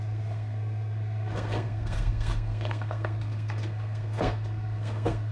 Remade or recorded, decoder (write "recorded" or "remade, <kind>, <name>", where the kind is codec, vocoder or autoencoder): remade, codec, SNAC